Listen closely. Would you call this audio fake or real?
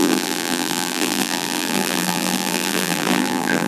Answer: fake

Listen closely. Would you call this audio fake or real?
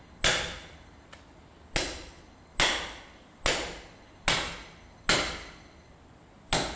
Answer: real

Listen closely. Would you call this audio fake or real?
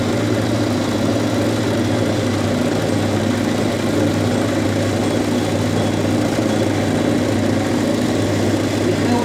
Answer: real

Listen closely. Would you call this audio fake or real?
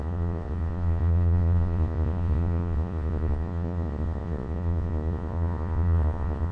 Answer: fake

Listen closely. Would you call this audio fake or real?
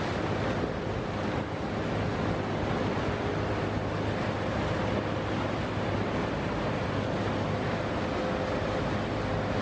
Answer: real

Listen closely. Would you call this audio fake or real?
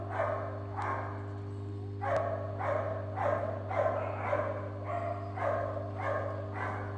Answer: real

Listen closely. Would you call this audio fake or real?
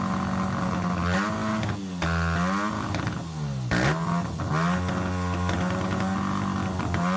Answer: real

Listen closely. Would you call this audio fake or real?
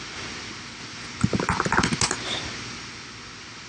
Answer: real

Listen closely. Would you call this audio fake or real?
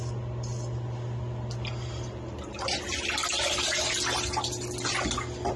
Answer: real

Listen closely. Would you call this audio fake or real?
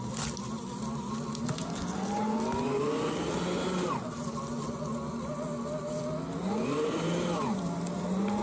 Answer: real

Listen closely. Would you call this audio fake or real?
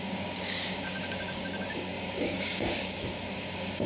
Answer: fake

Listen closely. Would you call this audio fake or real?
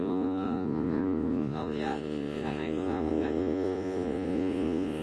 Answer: fake